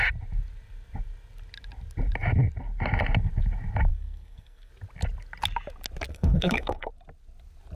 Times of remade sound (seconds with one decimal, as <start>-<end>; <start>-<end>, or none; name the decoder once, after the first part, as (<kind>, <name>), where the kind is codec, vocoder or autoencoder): 3.9-4.7 (codec, SNAC); 6.1-6.9